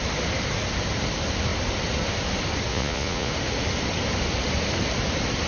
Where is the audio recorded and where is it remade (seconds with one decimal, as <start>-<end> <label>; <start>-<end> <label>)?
0.0-2.7 recorded; 2.7-3.3 remade; 3.3-5.5 recorded